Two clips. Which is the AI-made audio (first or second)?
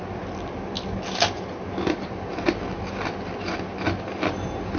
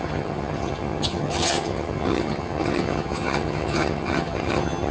second